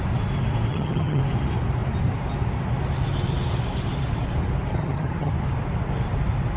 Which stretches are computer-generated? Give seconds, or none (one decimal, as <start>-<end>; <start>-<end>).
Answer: 0.7-1.2; 4.7-5.3